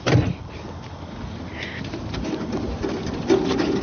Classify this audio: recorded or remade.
recorded